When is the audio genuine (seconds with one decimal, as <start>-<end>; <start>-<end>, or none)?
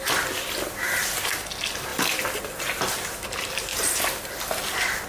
0.0-5.1